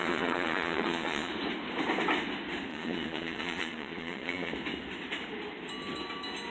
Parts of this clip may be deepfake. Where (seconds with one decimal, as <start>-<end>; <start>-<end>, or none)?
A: 0.0-1.3; 2.7-4.5